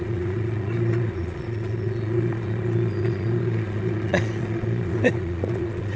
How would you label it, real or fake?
fake